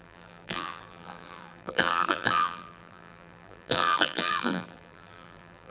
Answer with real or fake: fake